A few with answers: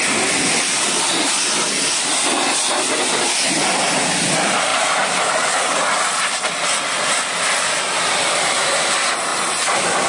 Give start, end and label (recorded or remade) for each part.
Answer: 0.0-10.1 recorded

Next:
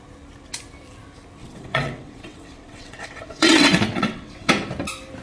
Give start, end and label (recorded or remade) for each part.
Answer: 0.0-1.4 recorded; 1.4-4.5 remade; 4.5-5.2 recorded

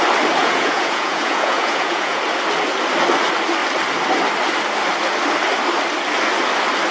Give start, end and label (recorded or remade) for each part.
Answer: 0.0-0.4 recorded; 0.4-2.2 remade; 2.2-6.9 recorded

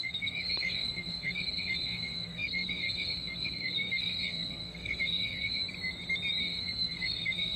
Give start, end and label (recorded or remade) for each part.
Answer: 0.0-5.6 remade; 5.6-6.4 recorded; 6.4-7.6 remade

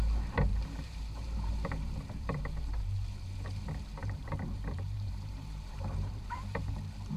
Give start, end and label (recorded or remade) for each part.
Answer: 0.0-0.5 recorded; 0.5-3.6 remade; 3.6-4.0 recorded; 4.0-6.7 remade; 6.7-7.2 recorded

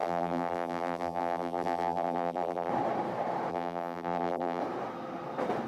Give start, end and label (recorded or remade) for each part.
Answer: 0.0-2.7 remade; 2.7-3.5 recorded; 3.5-4.6 remade; 4.6-5.7 recorded

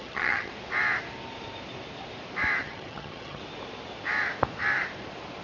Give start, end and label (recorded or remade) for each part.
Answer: 0.0-0.5 remade; 0.5-2.6 recorded; 2.6-3.4 remade; 3.4-5.4 recorded